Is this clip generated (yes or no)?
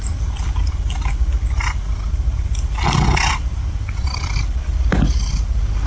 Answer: no